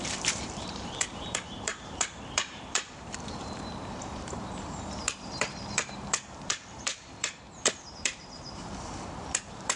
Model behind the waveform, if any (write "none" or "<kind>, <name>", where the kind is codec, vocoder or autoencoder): vocoder, BigVGAN v2